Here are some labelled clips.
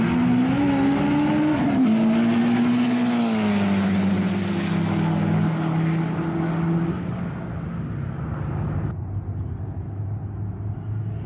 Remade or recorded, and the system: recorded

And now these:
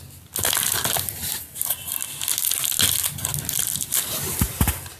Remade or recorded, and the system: recorded